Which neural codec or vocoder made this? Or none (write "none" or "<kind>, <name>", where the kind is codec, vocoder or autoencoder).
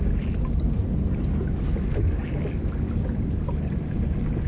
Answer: none